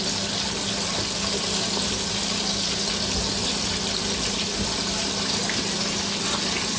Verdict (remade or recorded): recorded